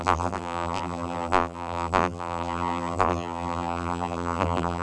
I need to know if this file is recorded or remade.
remade